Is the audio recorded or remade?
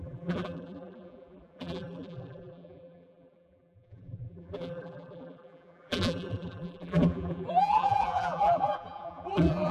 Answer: remade